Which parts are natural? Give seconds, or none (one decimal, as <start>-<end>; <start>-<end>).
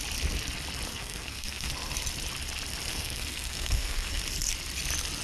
0.0-0.9; 1.7-2.9; 4.2-5.2